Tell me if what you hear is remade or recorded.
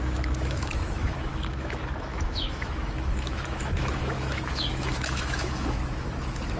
remade